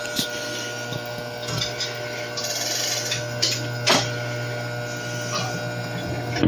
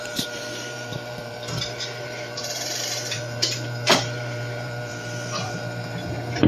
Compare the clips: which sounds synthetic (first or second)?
second